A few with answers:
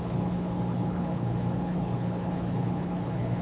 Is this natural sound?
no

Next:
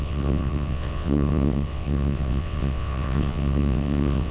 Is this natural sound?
no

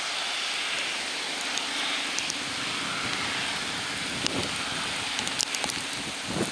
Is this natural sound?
yes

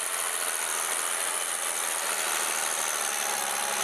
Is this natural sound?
yes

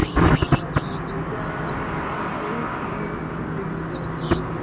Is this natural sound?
yes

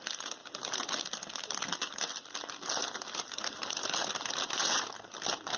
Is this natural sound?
yes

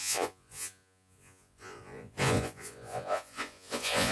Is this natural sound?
no